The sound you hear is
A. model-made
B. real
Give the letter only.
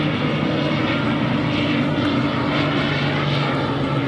B